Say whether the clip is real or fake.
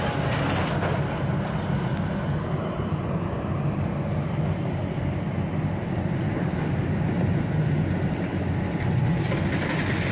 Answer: real